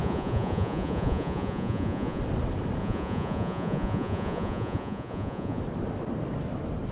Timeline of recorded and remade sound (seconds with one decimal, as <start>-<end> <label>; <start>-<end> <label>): 0.0-2.2 remade; 2.2-2.8 recorded; 2.8-5.6 remade; 5.6-6.9 recorded